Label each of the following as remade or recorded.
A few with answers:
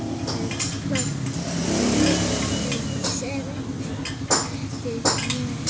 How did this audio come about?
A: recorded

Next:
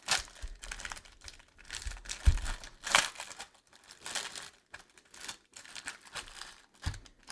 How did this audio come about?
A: recorded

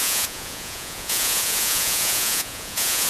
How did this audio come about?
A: remade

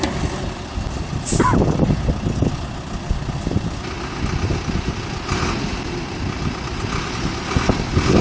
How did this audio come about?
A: recorded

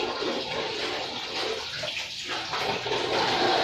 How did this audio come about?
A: recorded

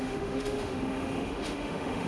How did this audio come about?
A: remade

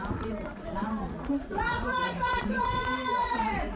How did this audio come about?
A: remade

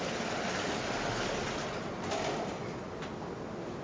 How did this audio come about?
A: recorded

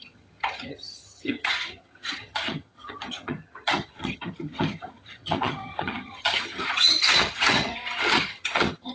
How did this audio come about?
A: remade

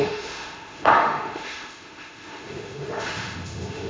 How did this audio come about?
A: remade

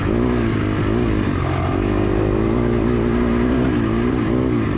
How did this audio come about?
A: recorded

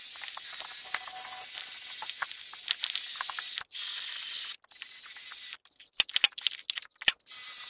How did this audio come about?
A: recorded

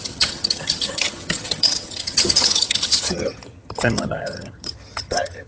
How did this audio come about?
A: remade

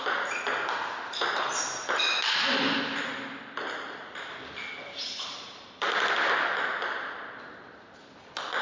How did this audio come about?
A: recorded